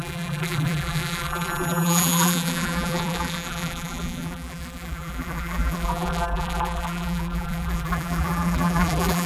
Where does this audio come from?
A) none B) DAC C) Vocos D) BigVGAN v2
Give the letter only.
D